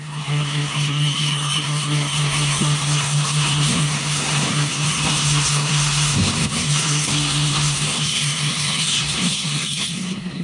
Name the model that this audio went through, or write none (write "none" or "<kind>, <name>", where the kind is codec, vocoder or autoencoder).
codec, SNAC